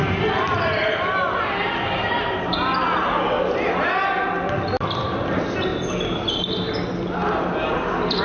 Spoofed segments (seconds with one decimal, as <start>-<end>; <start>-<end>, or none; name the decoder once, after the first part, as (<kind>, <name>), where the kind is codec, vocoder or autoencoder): none